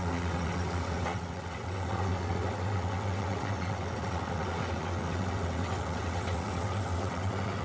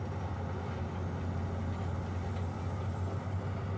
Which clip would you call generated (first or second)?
first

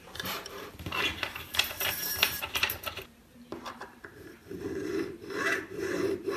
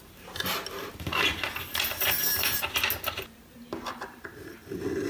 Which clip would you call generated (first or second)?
first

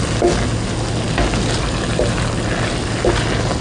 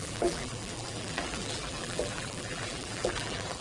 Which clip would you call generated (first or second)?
second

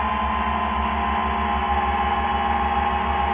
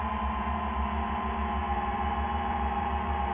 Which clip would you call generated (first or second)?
second